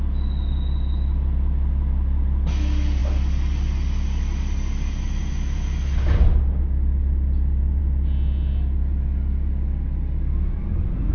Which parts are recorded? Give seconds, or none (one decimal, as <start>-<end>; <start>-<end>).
0.0-11.1